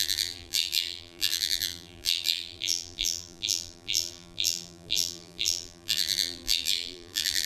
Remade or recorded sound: remade